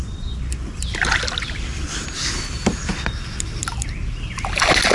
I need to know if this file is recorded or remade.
recorded